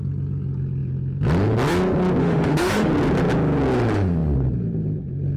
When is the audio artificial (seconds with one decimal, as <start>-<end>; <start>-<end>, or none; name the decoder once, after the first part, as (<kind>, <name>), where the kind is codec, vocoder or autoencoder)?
2.2-2.9 (autoencoder, DAC-VAE)